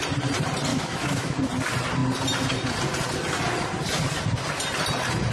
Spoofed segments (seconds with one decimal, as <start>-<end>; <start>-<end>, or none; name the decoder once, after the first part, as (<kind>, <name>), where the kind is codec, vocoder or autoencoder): 0.7-1.4 (autoencoder, DAC-VAE)